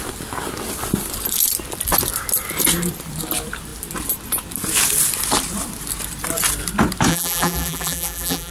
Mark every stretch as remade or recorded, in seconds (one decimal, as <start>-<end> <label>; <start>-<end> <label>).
0.0-7.1 recorded; 7.1-8.5 remade